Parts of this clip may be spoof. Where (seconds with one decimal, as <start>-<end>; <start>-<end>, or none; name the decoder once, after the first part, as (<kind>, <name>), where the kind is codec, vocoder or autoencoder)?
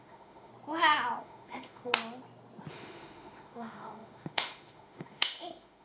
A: 0.0-0.5 (autoencoder, DAC-VAE); 1.2-1.9; 2.7-5.8